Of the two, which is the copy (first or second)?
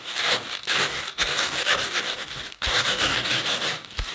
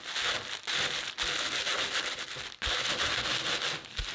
first